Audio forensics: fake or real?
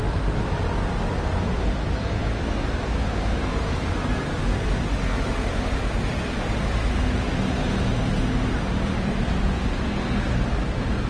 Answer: real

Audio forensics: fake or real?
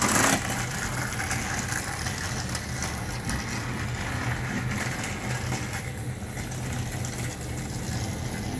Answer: real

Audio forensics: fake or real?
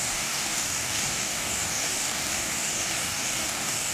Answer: fake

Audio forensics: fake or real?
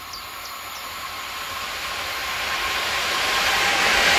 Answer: real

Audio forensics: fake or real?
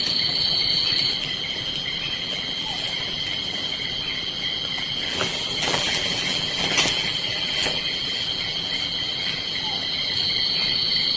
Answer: fake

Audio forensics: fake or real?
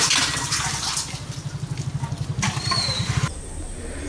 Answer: real